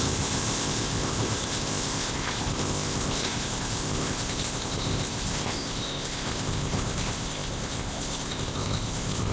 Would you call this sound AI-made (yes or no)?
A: yes